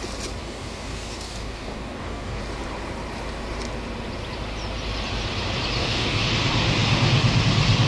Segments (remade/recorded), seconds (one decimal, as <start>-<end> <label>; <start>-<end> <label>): 0.0-0.4 recorded; 0.4-2.4 remade; 2.4-5.8 recorded; 5.8-6.3 remade; 6.3-7.9 recorded